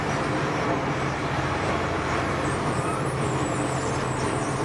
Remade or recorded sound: remade